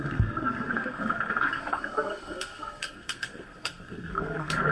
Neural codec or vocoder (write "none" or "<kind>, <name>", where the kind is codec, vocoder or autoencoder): codec, SNAC